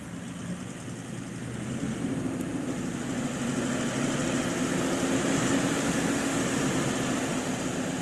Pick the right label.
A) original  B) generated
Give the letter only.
A